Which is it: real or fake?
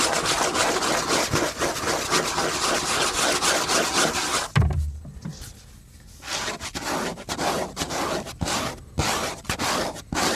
real